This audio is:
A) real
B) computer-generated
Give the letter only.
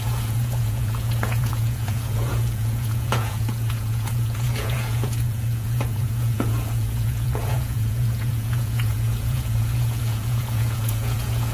B